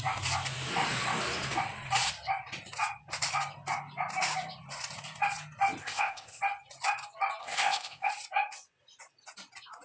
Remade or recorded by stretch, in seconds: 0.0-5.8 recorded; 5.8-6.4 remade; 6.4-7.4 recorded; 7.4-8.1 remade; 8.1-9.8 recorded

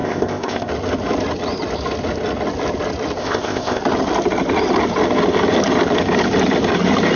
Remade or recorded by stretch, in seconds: 0.0-0.7 remade; 0.7-3.2 recorded; 3.2-3.8 remade; 3.8-7.2 recorded